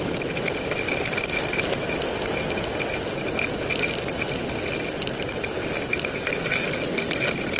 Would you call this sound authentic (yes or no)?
yes